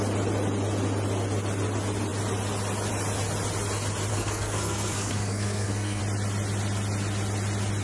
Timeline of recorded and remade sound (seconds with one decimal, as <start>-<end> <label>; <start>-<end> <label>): 0.0-4.1 recorded; 4.1-6.0 remade; 6.0-7.8 recorded